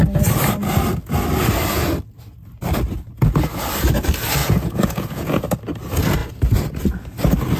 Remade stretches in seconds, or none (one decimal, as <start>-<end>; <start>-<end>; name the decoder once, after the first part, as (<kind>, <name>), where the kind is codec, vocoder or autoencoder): 4.4-5.4 (vocoder, Vocos)